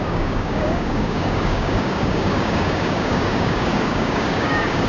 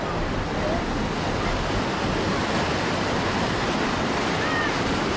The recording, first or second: second